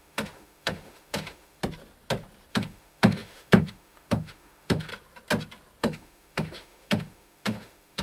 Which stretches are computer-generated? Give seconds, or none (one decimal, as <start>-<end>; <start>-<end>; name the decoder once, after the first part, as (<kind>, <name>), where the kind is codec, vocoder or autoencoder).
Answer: 0.0-1.6 (autoencoder, DAC-VAE); 2.5-4.9; 5.8-8.0